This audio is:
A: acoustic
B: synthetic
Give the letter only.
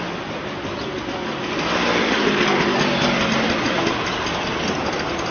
A